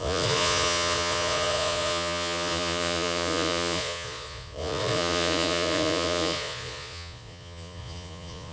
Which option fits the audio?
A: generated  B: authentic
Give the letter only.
A